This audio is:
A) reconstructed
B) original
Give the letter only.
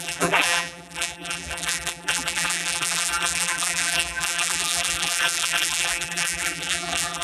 A